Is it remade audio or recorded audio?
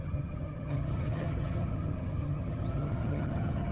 remade